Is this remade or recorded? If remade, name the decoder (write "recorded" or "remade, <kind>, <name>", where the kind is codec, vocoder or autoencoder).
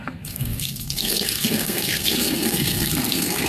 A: remade, codec, SNAC